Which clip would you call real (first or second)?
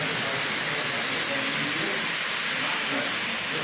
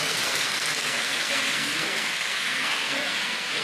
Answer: first